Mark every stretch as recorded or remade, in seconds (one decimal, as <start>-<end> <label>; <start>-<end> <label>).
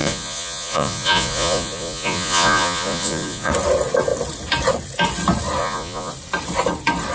0.0-3.5 remade; 3.5-5.6 recorded; 5.6-6.1 remade; 6.1-7.1 recorded